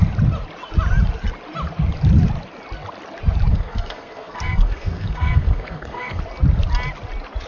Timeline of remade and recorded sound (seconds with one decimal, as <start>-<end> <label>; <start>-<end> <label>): 0.0-3.5 recorded; 3.5-6.2 remade; 6.2-7.5 recorded